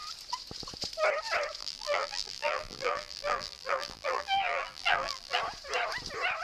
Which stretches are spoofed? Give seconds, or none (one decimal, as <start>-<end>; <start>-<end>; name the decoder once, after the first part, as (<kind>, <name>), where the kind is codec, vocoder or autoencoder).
1.6-5.4 (vocoder, BigVGAN v2)